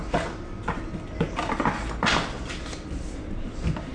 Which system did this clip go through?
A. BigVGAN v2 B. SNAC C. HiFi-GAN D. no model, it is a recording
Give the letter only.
A